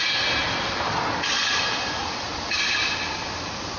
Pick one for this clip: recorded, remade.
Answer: recorded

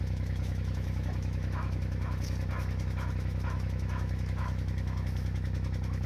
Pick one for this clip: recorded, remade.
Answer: remade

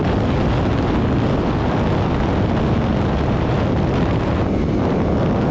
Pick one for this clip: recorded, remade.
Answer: recorded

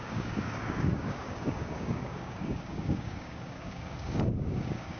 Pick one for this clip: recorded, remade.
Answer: remade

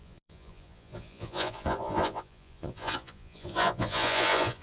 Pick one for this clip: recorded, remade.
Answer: remade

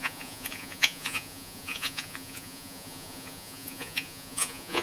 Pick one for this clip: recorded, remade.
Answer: remade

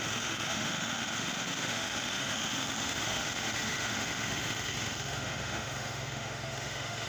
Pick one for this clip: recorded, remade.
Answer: remade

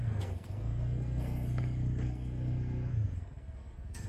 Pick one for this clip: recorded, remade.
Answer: remade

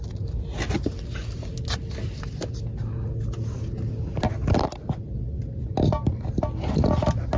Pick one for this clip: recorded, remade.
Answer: recorded